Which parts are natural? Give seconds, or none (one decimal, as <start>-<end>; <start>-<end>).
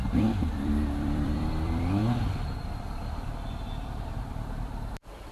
2.0-4.1